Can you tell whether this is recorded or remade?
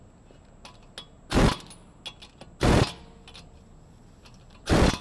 recorded